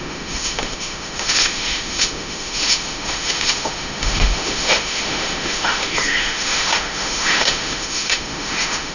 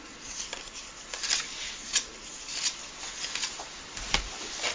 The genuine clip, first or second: second